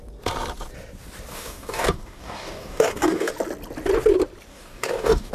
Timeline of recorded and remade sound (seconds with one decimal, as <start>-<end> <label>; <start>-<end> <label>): 0.0-1.3 recorded; 1.3-3.3 remade; 3.3-4.5 recorded; 4.5-5.3 remade